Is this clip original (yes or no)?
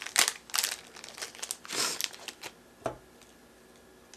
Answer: yes